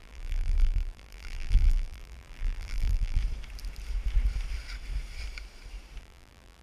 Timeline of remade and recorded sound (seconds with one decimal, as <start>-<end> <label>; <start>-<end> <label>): 0.0-3.2 remade; 3.2-6.0 recorded; 6.0-6.6 remade